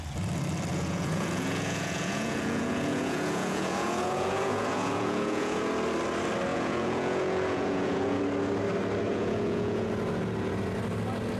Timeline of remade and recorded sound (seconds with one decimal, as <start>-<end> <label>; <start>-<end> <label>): 0.0-0.7 recorded; 0.7-5.7 remade; 5.7-6.5 recorded; 6.5-8.2 remade; 8.2-9.1 recorded; 9.1-9.9 remade; 9.9-11.4 recorded